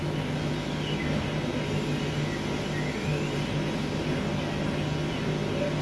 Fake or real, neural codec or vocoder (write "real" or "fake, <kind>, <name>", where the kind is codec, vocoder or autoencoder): real